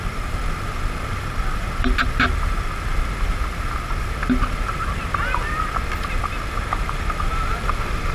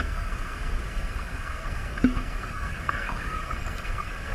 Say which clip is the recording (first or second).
first